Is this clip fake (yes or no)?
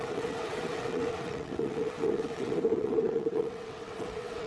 yes